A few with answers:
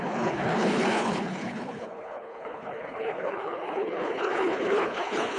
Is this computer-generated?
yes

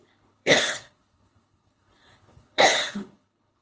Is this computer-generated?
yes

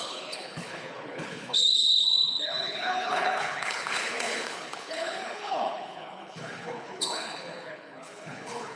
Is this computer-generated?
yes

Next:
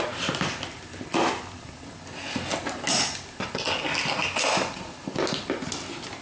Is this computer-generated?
no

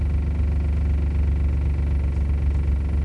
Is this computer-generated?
no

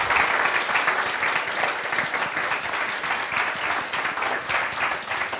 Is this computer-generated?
no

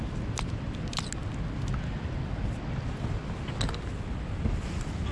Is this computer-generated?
no